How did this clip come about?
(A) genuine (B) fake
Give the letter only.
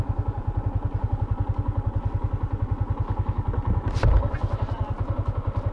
A